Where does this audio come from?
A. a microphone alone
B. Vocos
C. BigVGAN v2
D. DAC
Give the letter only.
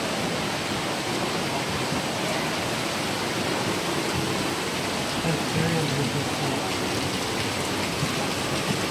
A